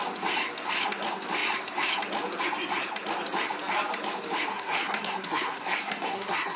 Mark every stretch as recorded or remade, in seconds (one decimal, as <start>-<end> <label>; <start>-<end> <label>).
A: 0.0-4.5 recorded; 4.5-6.6 remade

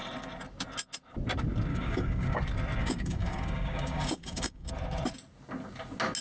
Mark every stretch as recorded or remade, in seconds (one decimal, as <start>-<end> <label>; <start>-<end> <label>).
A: 0.0-1.7 recorded; 1.7-2.4 remade; 2.4-2.8 recorded; 2.8-4.7 remade; 4.7-6.2 recorded

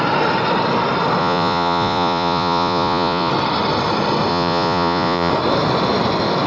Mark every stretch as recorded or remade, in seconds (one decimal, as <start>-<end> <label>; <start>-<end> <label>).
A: 0.0-1.2 recorded; 1.2-3.3 remade; 3.3-4.3 recorded; 4.3-5.3 remade; 5.3-6.5 recorded